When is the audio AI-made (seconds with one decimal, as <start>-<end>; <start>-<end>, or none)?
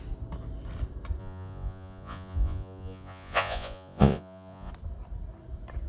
1.2-4.7